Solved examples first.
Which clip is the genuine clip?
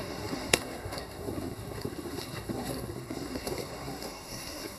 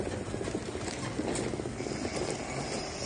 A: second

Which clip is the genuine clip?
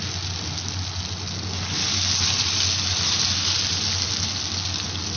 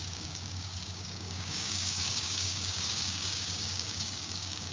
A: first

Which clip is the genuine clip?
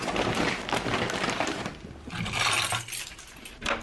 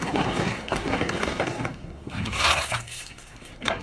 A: first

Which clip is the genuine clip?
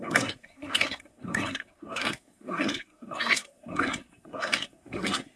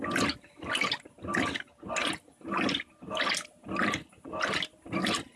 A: second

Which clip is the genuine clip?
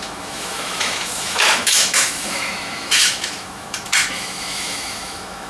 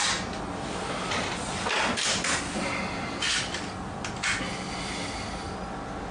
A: second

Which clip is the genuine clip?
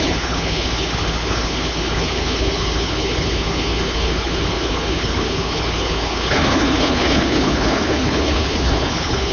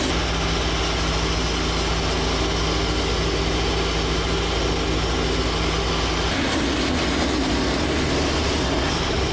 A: second